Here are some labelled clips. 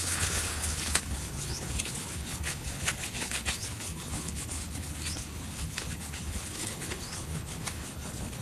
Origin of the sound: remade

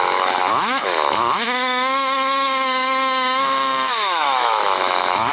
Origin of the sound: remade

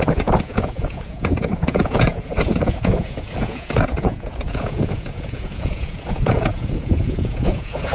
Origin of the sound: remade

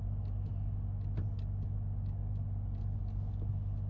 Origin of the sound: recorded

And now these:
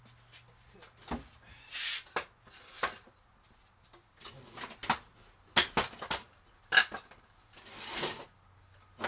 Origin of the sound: recorded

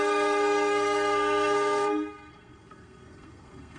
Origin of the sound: remade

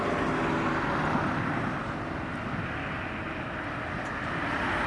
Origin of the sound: recorded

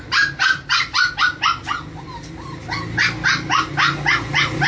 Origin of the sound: recorded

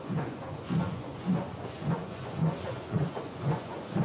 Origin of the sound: remade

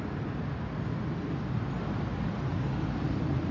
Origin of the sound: recorded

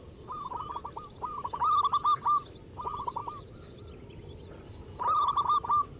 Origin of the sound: recorded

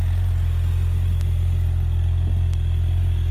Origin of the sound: recorded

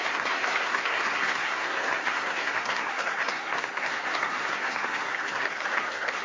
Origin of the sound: remade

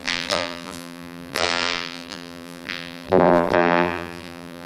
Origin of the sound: remade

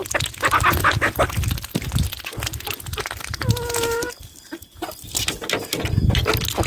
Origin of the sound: recorded